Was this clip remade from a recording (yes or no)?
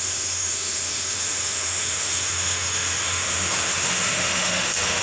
yes